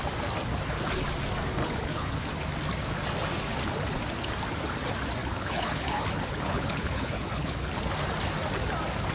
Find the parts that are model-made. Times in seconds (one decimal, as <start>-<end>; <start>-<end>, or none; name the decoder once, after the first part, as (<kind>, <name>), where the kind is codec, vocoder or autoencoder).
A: 1.6-2.3 (codec, HILCodec); 5.2-7.7